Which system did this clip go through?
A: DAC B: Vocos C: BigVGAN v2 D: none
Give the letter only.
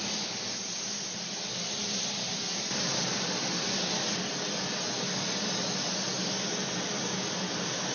D